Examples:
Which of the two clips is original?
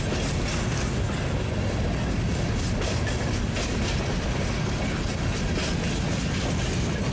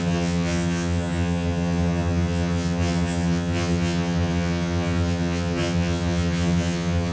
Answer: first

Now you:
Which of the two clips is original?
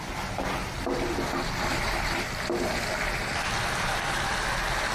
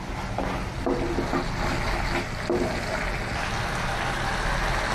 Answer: second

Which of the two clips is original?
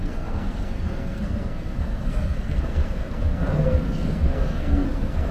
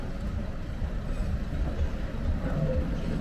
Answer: second